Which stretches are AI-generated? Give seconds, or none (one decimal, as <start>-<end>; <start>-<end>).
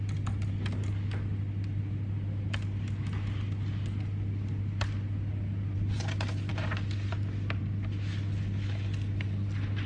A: none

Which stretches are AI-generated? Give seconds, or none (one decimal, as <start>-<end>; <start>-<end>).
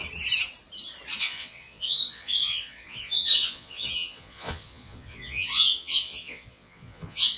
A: 1.2-7.4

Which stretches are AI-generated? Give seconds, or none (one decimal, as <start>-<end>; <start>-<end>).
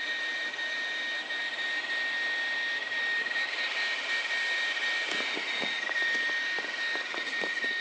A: none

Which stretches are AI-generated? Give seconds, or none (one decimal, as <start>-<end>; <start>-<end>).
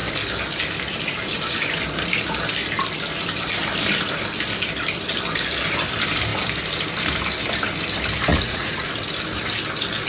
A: 8.3-8.9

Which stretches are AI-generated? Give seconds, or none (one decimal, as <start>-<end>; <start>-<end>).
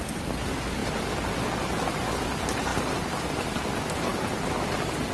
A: none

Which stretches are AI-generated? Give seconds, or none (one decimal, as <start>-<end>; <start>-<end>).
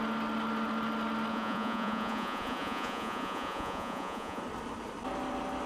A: 1.3-4.4